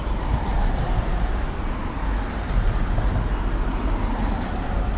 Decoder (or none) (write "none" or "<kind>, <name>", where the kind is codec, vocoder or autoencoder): none